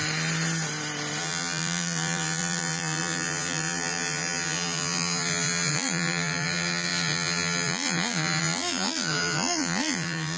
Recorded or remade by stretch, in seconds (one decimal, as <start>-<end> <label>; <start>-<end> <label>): 0.0-1.2 recorded; 1.2-10.4 remade